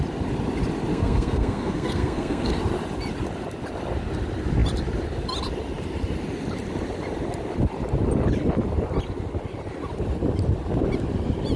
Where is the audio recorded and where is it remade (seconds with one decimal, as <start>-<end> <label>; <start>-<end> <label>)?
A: 0.0-0.9 recorded; 0.9-2.5 remade; 2.5-11.6 recorded